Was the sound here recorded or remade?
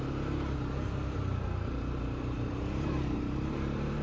remade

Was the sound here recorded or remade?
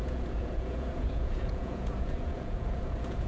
remade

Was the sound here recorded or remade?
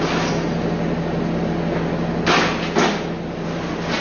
recorded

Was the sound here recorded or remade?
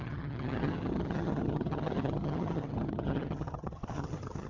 remade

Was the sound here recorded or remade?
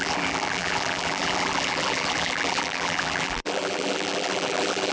remade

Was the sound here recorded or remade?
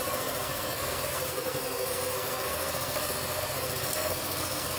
remade